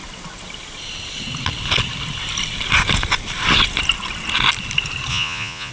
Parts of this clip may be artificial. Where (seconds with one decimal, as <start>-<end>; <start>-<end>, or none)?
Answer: 5.1-5.7